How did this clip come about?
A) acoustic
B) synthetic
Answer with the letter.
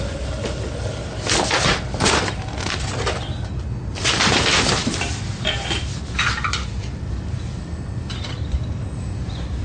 A